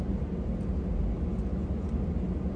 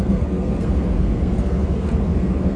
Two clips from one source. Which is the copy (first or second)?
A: second